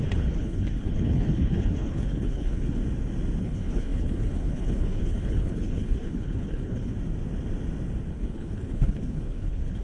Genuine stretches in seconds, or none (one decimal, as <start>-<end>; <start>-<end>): 2.8-3.4; 6.9-8.1